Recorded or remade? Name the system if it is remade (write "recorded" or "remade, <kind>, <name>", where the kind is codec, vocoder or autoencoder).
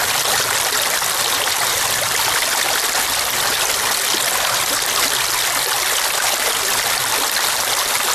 recorded